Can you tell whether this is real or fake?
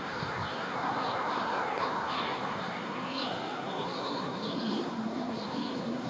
fake